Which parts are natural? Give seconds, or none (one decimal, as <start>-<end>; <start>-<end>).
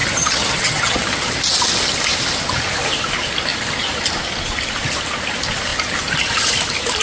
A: 1.0-7.0